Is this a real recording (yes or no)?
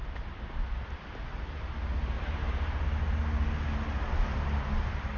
yes